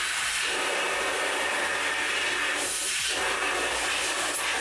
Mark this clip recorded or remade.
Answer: recorded